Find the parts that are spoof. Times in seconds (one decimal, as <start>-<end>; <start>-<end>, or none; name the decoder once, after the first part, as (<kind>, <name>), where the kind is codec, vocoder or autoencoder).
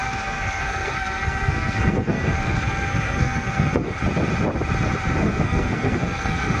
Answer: 0.0-4.0 (codec, SNAC); 5.2-6.6